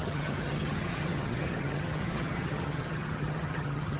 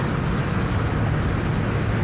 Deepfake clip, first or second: first